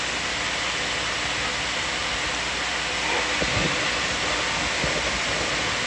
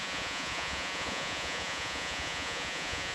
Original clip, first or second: first